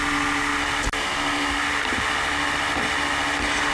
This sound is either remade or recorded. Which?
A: recorded